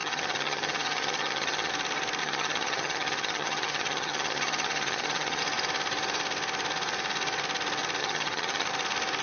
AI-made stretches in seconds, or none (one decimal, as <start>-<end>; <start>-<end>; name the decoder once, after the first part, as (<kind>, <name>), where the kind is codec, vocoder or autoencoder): 0.0-1.7 (vocoder, HiFi-GAN); 2.2-5.4; 8.0-8.7